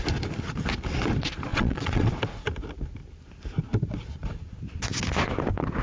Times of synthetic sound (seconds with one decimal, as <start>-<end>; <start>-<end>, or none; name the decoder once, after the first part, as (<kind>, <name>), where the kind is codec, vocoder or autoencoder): 1.5-2.1 (vocoder, WaveNeXt)